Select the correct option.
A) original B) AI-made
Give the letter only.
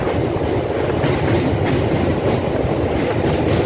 A